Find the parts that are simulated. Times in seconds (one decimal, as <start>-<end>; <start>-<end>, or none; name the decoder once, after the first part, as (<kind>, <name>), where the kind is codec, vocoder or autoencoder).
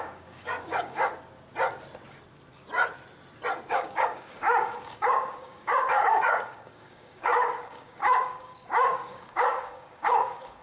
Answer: 0.0-1.1 (codec, DAC); 3.7-10.6